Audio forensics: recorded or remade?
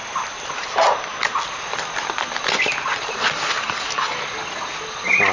recorded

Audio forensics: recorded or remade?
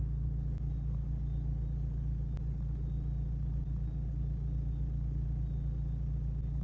recorded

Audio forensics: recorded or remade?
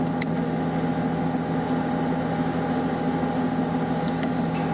recorded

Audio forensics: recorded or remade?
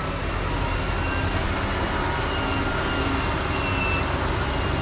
recorded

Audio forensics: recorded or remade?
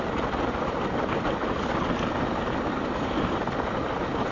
recorded